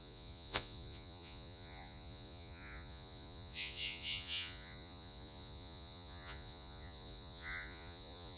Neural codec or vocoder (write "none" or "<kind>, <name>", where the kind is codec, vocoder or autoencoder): vocoder, Vocos